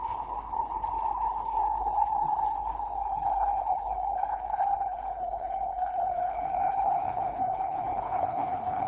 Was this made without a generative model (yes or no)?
no